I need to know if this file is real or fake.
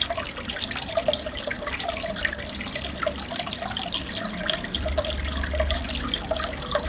real